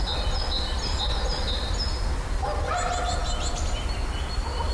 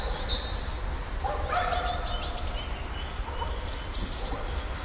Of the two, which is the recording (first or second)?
first